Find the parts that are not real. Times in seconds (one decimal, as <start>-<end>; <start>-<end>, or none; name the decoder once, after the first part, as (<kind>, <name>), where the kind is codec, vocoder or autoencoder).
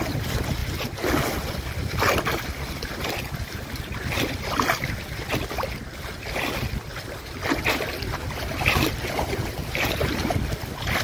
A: 9.6-10.2 (vocoder, BigVGAN v2)